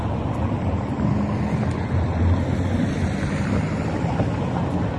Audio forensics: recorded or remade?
recorded